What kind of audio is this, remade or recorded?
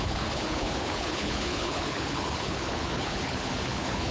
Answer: remade